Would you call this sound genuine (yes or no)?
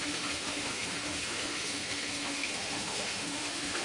no